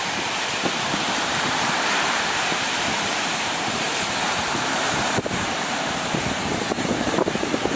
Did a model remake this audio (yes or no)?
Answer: yes